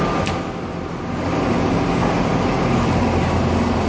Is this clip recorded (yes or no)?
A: yes